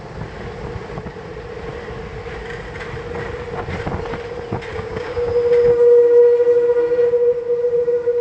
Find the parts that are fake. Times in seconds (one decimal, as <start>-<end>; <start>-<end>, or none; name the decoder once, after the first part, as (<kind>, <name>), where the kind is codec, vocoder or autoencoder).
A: 4.7-5.3 (codec, DAC)